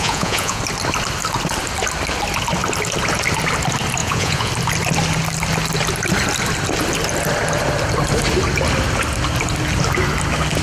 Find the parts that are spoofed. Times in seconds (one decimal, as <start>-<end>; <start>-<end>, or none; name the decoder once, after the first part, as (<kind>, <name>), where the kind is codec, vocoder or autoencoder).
0.0-0.6 (vocoder, Vocos); 4.0-4.5